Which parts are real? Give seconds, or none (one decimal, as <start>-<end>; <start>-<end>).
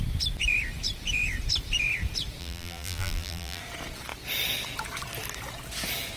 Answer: 0.0-2.4; 3.6-6.2